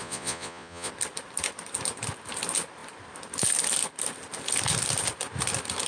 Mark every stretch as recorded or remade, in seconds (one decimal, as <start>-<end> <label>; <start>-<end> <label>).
0.0-0.9 remade; 0.9-5.9 recorded